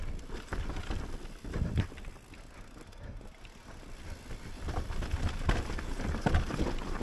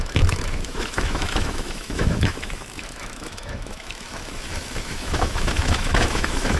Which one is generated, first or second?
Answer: second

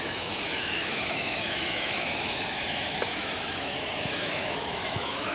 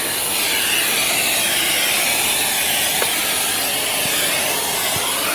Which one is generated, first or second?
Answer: first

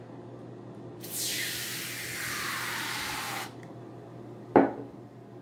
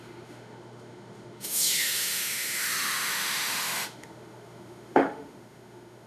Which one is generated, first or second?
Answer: second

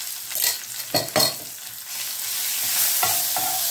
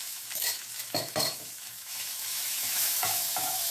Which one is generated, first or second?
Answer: second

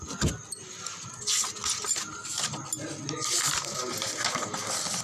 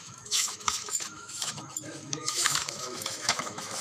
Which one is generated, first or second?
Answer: second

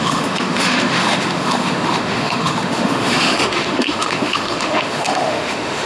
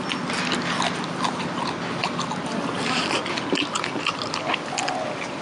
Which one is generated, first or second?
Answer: first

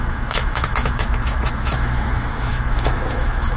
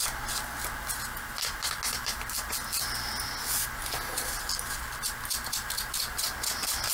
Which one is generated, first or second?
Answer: first